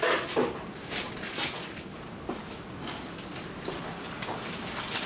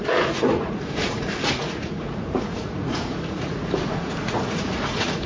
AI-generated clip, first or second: second